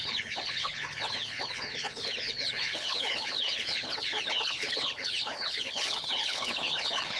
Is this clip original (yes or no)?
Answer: no